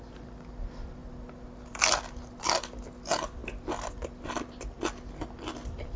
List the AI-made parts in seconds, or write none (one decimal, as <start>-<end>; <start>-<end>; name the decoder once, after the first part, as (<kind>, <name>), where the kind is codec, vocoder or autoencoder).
none